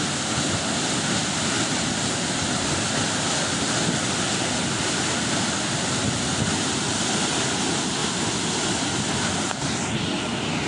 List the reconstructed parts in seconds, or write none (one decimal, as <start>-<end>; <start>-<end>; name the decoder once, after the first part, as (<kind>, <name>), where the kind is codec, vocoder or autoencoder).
none